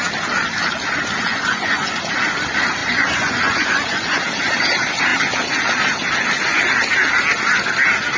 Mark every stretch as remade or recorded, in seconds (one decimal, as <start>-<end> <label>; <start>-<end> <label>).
0.0-1.3 recorded; 1.3-2.0 remade; 2.0-2.8 recorded; 2.8-4.2 remade; 4.2-8.2 recorded